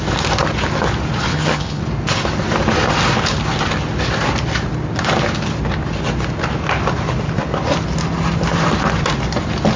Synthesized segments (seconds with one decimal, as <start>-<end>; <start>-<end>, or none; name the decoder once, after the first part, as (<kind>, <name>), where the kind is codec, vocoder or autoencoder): 1.3-1.8 (vocoder, HiFi-GAN)